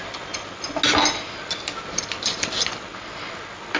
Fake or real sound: real